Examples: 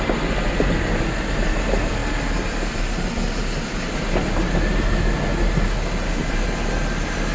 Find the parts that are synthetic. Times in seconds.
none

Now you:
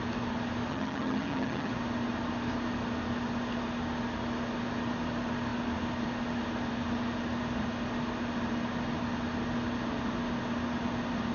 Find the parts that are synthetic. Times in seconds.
0.7-1.7

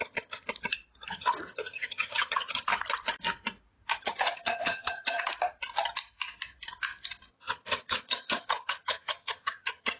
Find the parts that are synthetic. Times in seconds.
0.0-0.4; 1.1-2.7; 4.0-5.3; 7.3-10.0